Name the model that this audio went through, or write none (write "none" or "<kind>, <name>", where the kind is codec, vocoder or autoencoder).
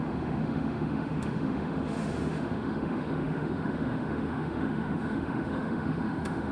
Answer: autoencoder, DAC-VAE